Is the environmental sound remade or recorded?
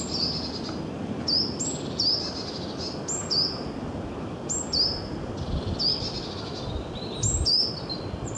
recorded